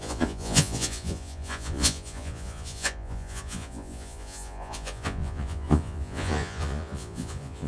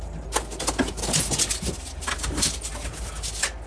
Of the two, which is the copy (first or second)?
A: first